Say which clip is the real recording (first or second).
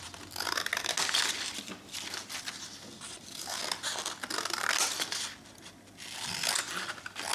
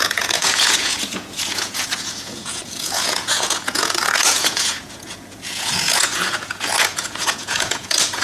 first